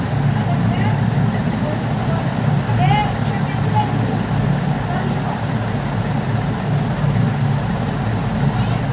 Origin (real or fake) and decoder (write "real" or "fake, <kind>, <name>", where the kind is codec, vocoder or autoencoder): real